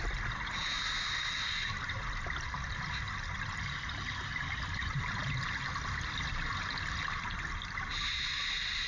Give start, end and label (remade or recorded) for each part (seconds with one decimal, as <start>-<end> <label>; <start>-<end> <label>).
0.0-8.9 recorded

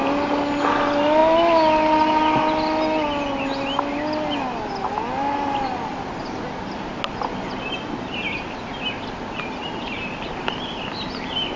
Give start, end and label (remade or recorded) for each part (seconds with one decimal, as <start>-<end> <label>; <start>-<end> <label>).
0.0-11.6 recorded

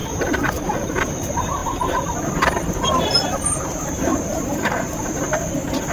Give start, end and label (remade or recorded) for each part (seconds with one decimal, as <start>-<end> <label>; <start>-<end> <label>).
0.0-1.1 remade; 1.1-4.1 recorded; 4.1-5.2 remade; 5.2-5.9 recorded

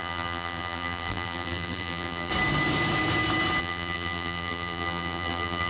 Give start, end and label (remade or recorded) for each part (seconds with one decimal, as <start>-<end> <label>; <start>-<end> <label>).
0.0-2.3 remade; 2.3-3.6 recorded; 3.6-5.7 remade

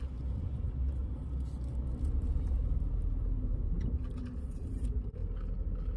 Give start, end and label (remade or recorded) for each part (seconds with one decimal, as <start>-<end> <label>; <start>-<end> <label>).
0.0-1.0 remade; 1.0-2.0 recorded; 2.0-5.2 remade; 5.2-6.0 recorded

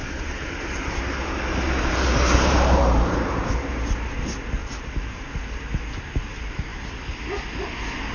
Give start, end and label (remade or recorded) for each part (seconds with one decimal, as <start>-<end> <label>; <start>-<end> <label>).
0.0-3.7 remade; 3.7-4.6 recorded; 4.6-5.3 remade; 5.3-8.1 recorded